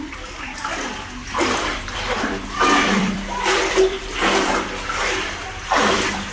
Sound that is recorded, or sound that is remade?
remade